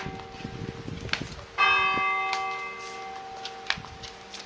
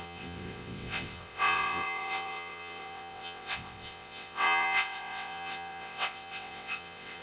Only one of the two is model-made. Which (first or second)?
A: second